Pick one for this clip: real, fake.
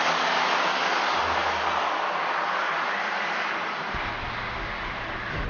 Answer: real